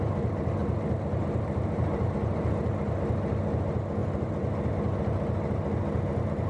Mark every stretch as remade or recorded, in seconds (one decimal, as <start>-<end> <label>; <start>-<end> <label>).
0.0-0.6 recorded; 0.6-2.5 remade; 2.5-4.0 recorded; 4.0-4.7 remade; 4.7-6.5 recorded